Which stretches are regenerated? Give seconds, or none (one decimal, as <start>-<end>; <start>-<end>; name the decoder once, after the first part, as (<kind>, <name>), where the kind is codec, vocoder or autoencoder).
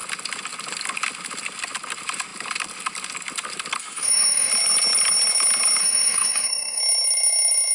3.8-4.5 (autoencoder, DAC-VAE); 5.8-6.8